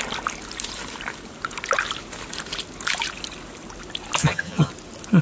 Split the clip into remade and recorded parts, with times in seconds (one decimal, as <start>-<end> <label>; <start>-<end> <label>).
0.0-4.2 recorded; 4.2-4.7 remade; 4.7-5.2 recorded